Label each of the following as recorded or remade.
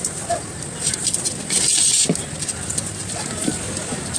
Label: recorded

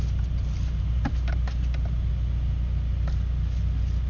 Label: recorded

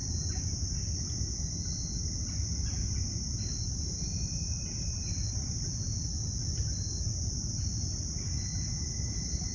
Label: recorded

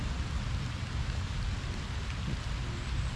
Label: recorded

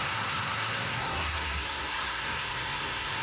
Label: remade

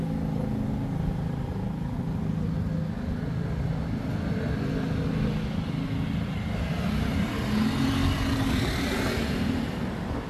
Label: recorded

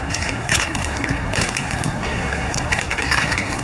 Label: remade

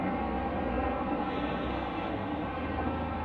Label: remade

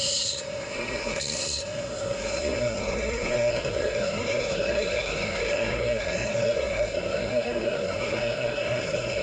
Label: remade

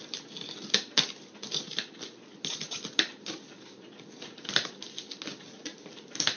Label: recorded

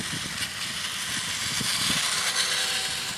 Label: recorded